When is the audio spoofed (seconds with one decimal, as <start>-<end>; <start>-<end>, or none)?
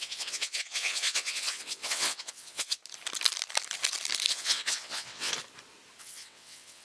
0.0-2.8; 4.3-5.3; 6.0-6.8